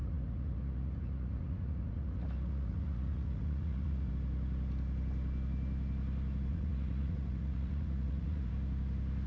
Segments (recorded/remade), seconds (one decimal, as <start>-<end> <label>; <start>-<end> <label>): 0.0-4.1 remade; 4.1-6.5 recorded; 6.5-8.5 remade; 8.5-9.3 recorded